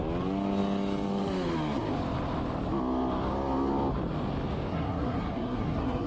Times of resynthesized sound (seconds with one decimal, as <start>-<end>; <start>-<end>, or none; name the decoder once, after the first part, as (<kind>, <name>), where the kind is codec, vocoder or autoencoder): 4.7-6.1 (codec, SNAC)